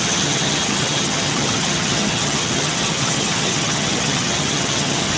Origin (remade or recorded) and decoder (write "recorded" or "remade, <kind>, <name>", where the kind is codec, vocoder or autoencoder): remade, vocoder, HiFi-GAN